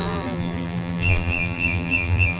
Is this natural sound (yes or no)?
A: no